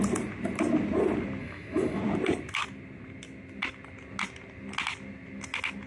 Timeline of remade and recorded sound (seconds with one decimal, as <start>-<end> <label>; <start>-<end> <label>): 0.0-1.4 recorded; 1.4-2.0 remade; 2.0-5.9 recorded